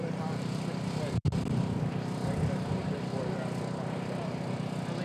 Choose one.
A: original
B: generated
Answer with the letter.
A